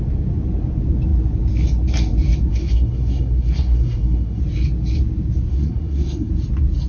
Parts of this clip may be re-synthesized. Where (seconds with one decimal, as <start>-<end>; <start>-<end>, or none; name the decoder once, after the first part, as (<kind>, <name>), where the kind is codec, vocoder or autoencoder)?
2.5-4.4 (codec, SNAC); 5.5-6.3